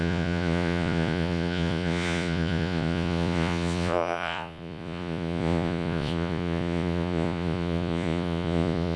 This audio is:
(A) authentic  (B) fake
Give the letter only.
B